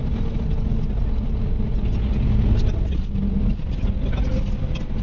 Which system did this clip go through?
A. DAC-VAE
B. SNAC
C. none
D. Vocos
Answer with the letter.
C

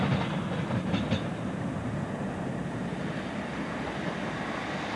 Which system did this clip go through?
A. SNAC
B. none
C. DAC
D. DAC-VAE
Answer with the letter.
B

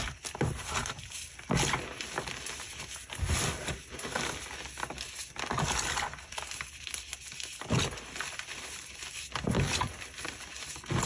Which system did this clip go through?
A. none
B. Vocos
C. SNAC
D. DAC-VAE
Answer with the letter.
A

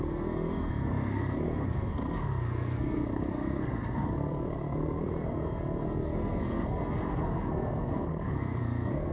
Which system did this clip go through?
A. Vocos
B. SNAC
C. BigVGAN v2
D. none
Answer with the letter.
B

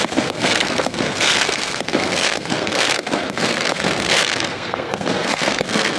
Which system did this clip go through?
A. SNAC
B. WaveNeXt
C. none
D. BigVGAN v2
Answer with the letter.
A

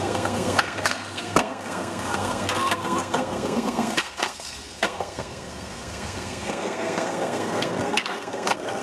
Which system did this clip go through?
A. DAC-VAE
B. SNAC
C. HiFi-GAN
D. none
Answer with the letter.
B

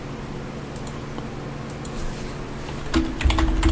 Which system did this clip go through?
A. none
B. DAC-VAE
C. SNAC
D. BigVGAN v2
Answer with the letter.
A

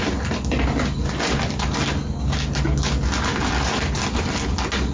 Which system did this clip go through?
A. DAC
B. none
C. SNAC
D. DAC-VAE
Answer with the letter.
B